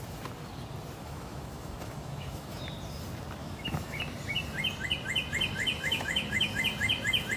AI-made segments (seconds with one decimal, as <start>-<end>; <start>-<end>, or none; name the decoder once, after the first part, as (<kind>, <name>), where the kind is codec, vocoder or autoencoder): 1.0-2.6 (autoencoder, DAC-VAE); 3.4-4.0; 5.6-6.6